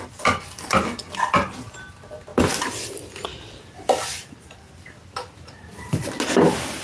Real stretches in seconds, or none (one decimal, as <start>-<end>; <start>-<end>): 0.0-2.3